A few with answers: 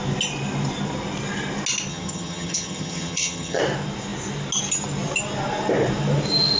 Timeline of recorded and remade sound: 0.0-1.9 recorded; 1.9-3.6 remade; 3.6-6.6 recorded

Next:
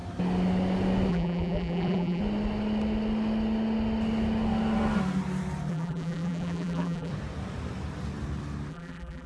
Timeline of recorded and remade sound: 0.0-1.1 recorded; 1.1-2.2 remade; 2.2-5.7 recorded; 5.7-7.1 remade; 7.1-8.7 recorded; 8.7-9.3 remade

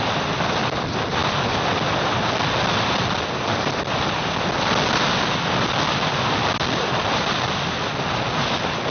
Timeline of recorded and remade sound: 0.0-8.9 recorded

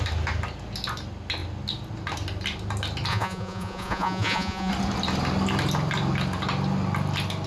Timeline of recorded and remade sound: 0.0-3.1 recorded; 3.1-4.7 remade; 4.7-7.5 recorded

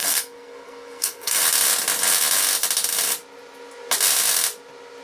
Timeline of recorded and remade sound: 0.0-1.4 remade; 1.4-5.0 recorded

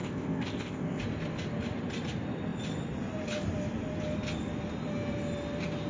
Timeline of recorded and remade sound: 0.0-1.0 remade; 1.0-5.9 recorded

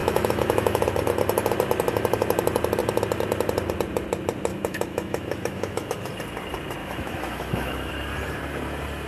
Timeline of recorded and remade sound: 0.0-0.8 remade; 0.8-4.5 recorded; 4.5-6.1 remade; 6.1-6.8 recorded; 6.8-7.9 remade; 7.9-9.1 recorded

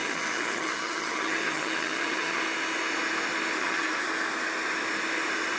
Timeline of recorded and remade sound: 0.0-2.4 remade; 2.4-3.6 recorded; 3.6-4.0 remade; 4.0-5.6 recorded